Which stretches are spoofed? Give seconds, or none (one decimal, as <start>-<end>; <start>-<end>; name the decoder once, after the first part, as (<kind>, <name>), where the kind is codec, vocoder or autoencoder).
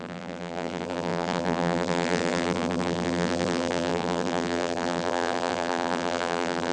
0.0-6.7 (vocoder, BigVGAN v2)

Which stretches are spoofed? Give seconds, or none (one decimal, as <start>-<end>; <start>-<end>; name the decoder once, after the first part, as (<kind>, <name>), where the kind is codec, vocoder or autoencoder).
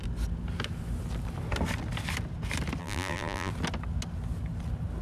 2.8-3.5 (vocoder, BigVGAN v2)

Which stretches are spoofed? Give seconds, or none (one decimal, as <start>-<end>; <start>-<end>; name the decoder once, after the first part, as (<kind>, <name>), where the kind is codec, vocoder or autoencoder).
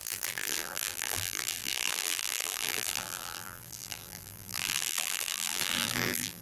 0.0-6.4 (vocoder, BigVGAN v2)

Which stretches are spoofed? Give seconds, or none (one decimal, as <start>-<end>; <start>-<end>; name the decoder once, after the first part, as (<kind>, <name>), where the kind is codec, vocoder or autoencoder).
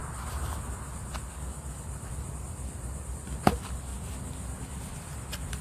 1.3-3.9 (vocoder, BigVGAN v2); 4.6-5.6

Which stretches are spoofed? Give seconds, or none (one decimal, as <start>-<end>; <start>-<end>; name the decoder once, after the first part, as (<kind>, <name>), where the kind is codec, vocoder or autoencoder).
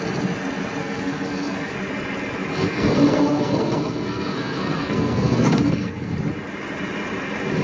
0.8-1.7 (codec, SNAC); 2.5-6.1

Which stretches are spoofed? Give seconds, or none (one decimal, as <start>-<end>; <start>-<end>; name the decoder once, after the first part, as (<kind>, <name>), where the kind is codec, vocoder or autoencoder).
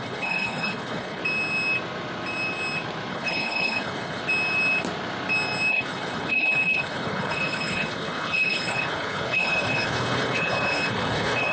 0.0-1.2 (codec, HILCodec); 3.1-4.2; 5.7-11.5